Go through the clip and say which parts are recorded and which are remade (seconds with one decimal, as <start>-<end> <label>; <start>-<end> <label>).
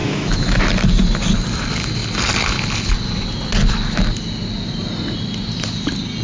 0.0-0.6 remade; 0.6-6.2 recorded